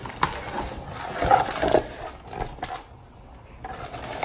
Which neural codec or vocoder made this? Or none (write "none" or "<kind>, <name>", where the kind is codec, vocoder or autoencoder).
none